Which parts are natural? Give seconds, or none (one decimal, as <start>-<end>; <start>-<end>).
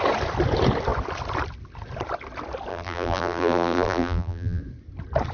0.0-2.7; 4.6-5.3